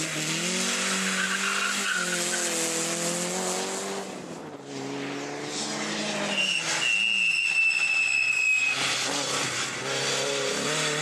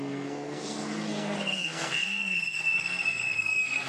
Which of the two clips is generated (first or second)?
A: second